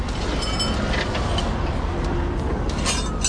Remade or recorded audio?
recorded